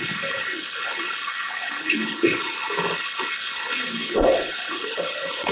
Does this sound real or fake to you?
fake